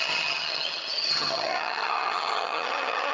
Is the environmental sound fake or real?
fake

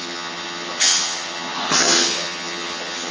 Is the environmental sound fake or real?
fake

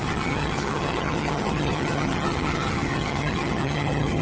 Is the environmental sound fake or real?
fake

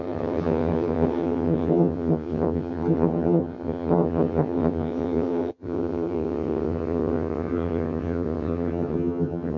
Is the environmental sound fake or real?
fake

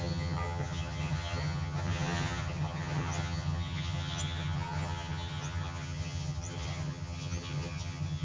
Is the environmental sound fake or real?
fake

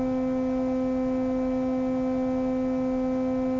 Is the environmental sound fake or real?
real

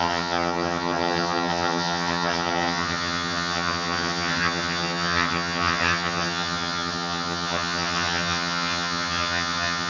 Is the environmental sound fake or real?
fake